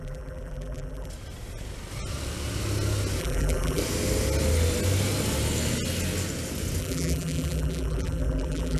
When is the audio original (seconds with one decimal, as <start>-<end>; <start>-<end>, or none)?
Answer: 1.1-3.2; 3.8-6.8